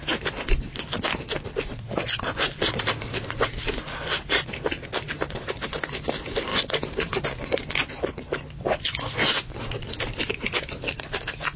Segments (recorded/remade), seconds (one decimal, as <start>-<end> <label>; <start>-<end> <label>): 0.0-11.6 recorded